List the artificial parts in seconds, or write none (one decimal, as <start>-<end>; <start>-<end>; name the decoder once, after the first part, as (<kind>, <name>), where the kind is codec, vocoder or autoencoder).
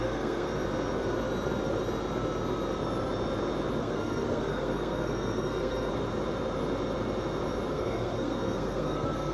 0.0-0.5 (codec, SNAC); 3.8-5.9; 7.7-9.3